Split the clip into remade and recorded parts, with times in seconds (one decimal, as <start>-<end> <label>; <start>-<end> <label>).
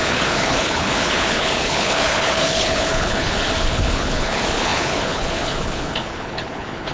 0.0-6.9 remade